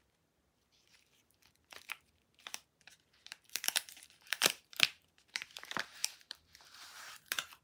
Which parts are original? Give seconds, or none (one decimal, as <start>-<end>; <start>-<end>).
none